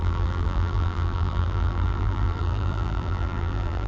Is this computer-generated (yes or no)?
yes